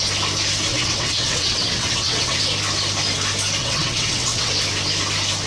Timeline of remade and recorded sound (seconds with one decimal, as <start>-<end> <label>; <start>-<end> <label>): 0.0-0.7 recorded; 0.7-2.4 remade; 2.4-3.6 recorded; 3.6-4.5 remade; 4.5-5.5 recorded